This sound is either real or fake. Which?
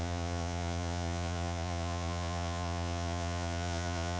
fake